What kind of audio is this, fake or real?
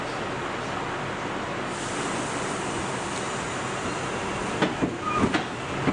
real